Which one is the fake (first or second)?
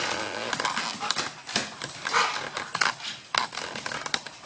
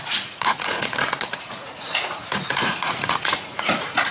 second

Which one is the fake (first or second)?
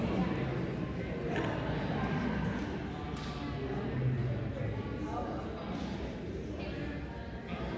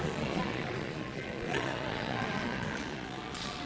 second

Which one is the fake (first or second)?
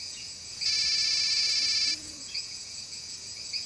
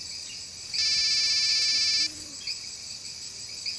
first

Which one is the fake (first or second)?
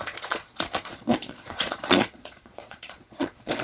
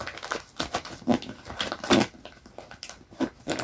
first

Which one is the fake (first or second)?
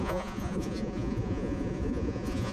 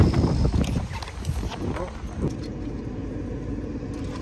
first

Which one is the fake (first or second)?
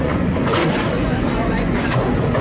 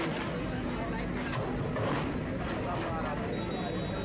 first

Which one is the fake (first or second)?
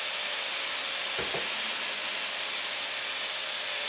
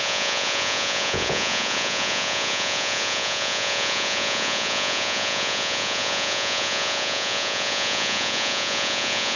second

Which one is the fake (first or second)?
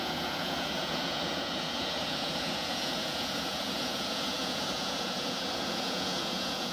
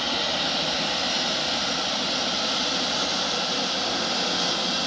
first